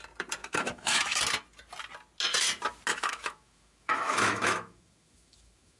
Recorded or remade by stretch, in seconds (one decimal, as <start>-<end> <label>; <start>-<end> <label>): 0.0-0.4 recorded; 0.4-1.2 remade; 1.2-2.9 recorded; 2.9-5.8 remade